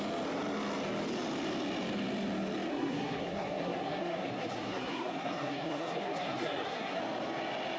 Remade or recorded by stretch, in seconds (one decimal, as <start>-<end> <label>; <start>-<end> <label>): 0.0-2.7 recorded; 2.7-7.0 remade; 7.0-7.8 recorded